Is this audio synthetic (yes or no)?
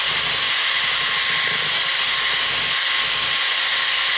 no